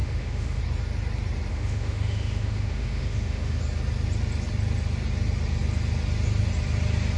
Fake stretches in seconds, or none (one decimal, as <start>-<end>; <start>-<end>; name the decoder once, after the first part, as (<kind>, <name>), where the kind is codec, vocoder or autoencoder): 0.0-0.6 (autoencoder, DAC-VAE); 1.5-3.6